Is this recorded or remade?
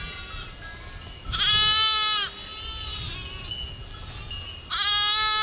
recorded